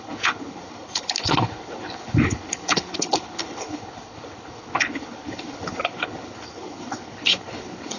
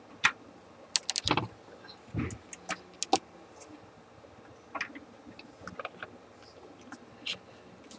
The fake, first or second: first